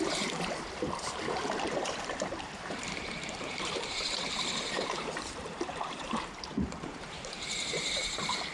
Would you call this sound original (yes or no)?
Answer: no